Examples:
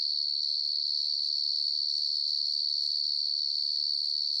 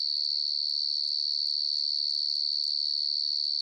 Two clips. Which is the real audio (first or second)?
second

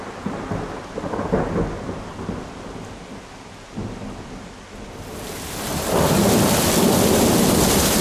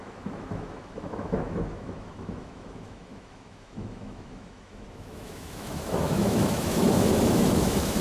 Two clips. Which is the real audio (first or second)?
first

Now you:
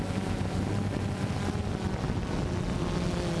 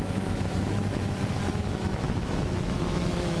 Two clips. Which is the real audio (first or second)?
first